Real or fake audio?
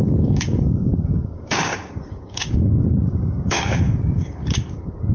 fake